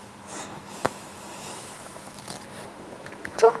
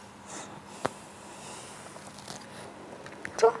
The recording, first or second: second